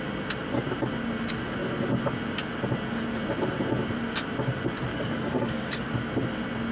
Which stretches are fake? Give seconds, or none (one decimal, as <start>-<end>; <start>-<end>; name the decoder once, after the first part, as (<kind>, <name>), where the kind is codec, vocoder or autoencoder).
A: 4.9-5.9 (codec, DAC)